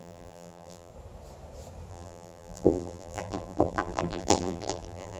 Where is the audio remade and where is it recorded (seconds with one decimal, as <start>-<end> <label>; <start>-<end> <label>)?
0.0-0.9 remade; 0.9-1.9 recorded; 1.9-5.2 remade